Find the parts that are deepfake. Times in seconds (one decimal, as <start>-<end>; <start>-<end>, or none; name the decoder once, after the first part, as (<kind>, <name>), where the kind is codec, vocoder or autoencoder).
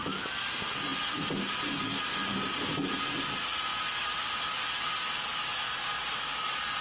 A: none